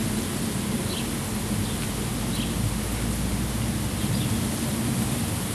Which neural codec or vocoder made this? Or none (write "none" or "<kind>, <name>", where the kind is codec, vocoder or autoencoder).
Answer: none